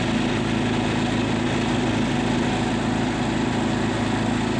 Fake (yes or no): no